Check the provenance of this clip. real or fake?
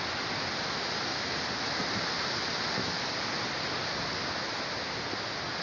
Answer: real